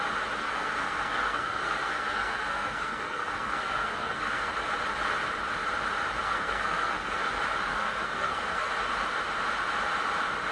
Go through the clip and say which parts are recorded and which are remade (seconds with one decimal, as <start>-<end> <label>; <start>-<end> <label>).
0.0-0.4 recorded; 0.4-4.5 remade; 4.5-6.2 recorded; 6.2-7.3 remade; 7.3-7.7 recorded; 7.7-8.7 remade; 8.7-10.5 recorded